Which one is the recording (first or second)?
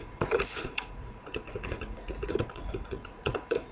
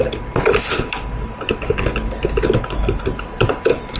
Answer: second